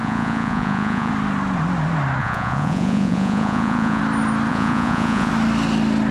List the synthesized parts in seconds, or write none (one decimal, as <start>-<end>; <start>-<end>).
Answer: 0.0-1.1; 2.2-4.0; 4.5-5.3